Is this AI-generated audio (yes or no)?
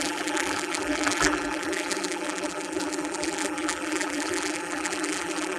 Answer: yes